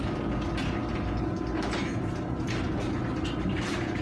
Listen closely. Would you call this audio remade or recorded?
recorded